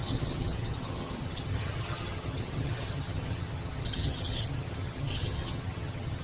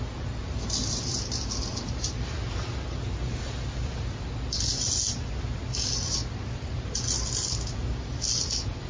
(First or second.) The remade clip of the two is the first